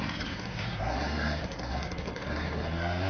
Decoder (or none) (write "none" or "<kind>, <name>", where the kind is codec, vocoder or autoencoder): codec, SNAC